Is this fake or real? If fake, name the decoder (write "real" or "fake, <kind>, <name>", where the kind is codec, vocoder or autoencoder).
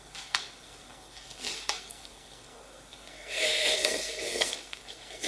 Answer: fake, codec, SNAC